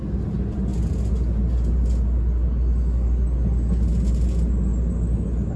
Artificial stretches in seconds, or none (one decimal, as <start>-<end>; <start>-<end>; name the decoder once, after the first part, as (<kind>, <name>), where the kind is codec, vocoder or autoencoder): none